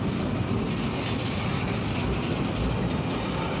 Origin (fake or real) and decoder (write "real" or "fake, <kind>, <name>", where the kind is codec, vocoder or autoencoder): real